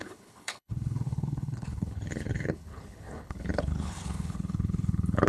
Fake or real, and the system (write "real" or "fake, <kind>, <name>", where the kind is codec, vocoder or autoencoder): fake, codec, HILCodec